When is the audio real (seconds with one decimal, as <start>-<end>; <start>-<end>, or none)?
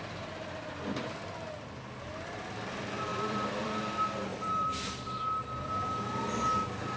0.0-3.1; 3.7-4.3; 5.6-7.0